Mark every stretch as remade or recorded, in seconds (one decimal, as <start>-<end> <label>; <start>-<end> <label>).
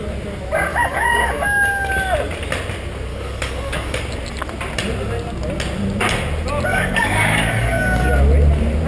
0.0-0.7 recorded; 0.7-1.9 remade; 1.9-3.1 recorded; 3.1-4.0 remade; 4.0-6.7 recorded; 6.7-8.1 remade; 8.1-8.9 recorded